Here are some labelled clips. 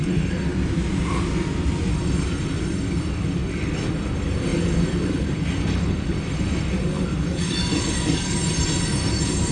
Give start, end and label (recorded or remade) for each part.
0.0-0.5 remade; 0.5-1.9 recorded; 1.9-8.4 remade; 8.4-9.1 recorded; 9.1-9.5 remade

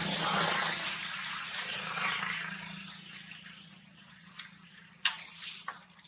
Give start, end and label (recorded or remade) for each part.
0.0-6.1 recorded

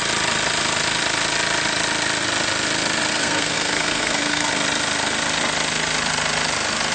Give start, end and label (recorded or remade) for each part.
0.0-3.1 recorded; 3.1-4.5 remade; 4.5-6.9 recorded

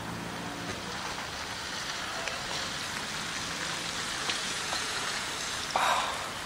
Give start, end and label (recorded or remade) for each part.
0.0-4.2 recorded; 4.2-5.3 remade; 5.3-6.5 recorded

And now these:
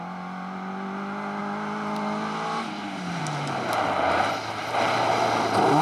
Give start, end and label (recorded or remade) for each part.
0.0-1.4 recorded; 1.4-3.2 remade; 3.2-5.8 recorded

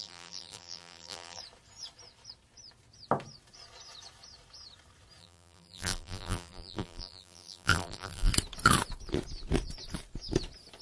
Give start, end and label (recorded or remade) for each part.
0.0-1.4 remade; 1.4-5.2 recorded; 5.2-8.3 remade; 8.3-10.8 recorded